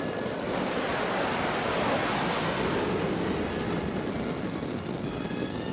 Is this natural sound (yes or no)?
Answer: yes